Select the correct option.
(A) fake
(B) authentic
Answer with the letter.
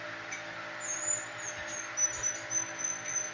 B